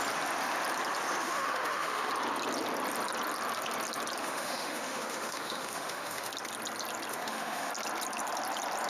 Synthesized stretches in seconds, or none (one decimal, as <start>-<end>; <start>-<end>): 1.2-2.1; 4.2-6.3; 7.1-7.7